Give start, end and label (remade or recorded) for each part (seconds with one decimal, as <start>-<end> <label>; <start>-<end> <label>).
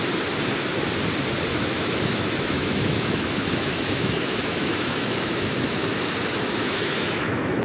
0.0-1.5 recorded; 1.5-6.1 remade; 6.1-6.6 recorded; 6.6-7.6 remade